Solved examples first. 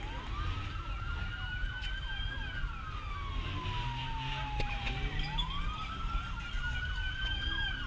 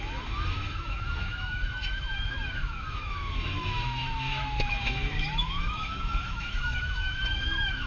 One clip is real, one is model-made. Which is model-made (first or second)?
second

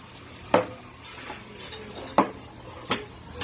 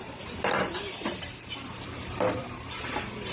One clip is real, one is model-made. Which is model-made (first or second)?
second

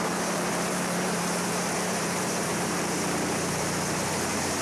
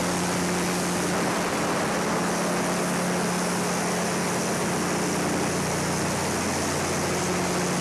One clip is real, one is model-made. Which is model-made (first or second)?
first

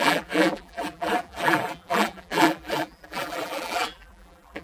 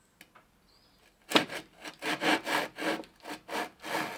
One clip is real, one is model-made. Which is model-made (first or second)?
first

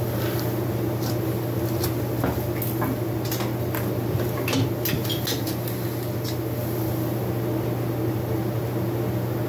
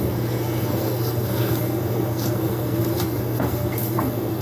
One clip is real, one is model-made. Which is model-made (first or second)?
second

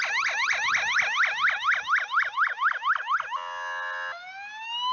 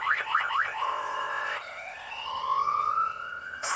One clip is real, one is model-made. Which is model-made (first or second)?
second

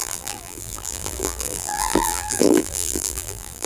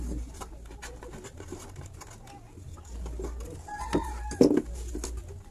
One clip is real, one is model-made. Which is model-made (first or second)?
first